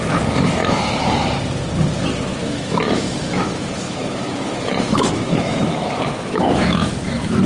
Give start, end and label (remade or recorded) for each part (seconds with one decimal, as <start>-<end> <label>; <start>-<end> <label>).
0.0-2.4 recorded; 2.4-6.9 remade; 6.9-7.5 recorded